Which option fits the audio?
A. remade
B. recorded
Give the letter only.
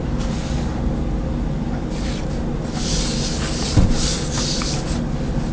B